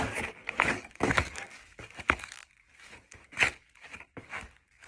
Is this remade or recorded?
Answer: remade